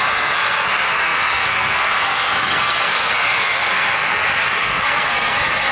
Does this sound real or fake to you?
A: fake